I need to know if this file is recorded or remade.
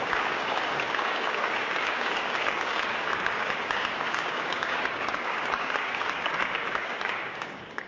remade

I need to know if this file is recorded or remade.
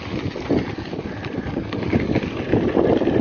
recorded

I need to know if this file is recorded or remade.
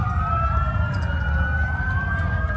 recorded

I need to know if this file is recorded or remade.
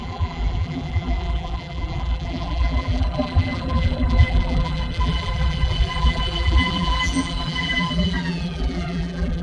remade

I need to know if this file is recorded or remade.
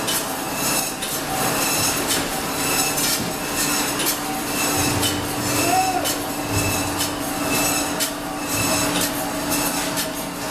recorded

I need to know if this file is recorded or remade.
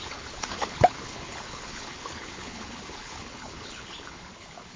remade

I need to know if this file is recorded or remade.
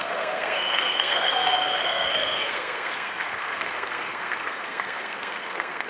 remade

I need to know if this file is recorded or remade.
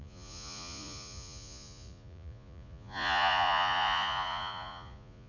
remade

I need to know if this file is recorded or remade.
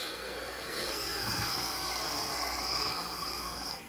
remade